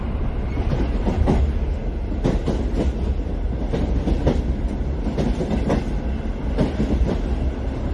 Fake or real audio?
real